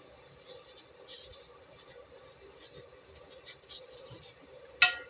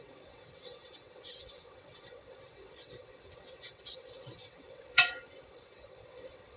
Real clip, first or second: first